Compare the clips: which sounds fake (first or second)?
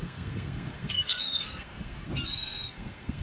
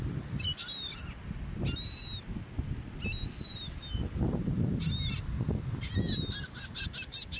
first